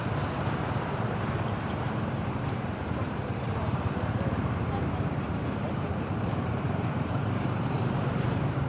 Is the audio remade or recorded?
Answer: remade